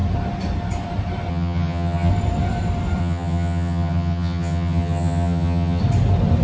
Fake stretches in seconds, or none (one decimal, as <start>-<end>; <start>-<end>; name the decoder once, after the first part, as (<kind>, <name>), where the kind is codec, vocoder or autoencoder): 1.3-2.1 (vocoder, HiFi-GAN); 3.0-5.8